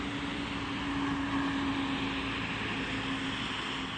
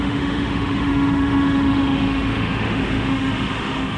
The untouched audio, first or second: first